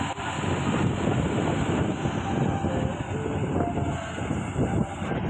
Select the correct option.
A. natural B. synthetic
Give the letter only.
A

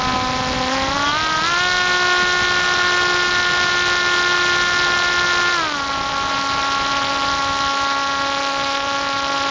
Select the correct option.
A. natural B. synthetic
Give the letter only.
A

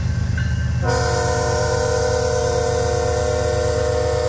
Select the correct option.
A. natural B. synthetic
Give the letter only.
A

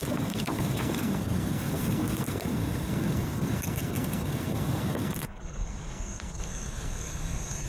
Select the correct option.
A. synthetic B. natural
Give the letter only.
A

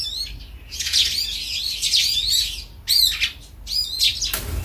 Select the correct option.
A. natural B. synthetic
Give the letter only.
A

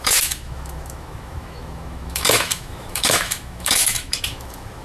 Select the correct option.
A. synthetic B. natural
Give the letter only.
A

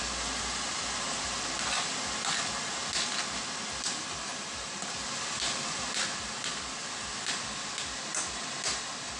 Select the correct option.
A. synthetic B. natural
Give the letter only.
B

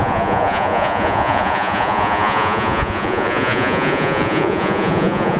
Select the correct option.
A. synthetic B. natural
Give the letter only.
A